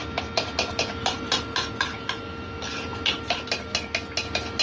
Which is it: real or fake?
real